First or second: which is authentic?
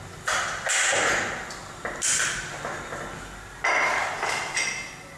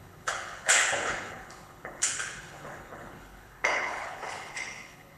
first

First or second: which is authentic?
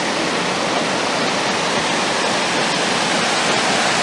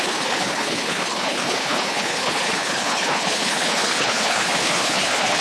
first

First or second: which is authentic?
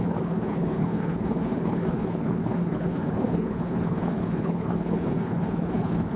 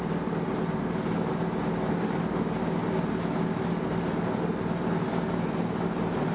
second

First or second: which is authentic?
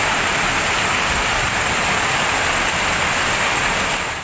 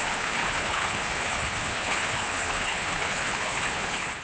first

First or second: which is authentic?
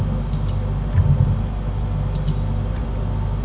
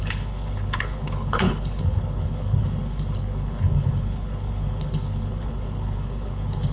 first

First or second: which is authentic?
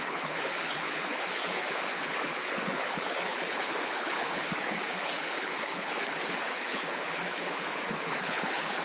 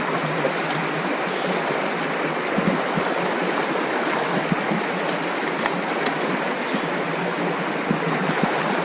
second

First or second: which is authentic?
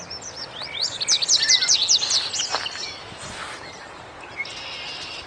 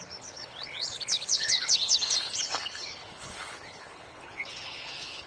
first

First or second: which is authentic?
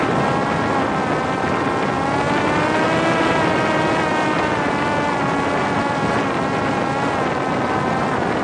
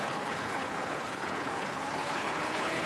first